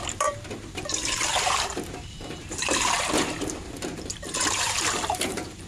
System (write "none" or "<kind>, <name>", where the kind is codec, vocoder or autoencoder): vocoder, BigVGAN v2